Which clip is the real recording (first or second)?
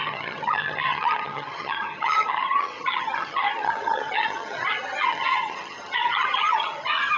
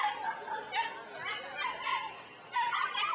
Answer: second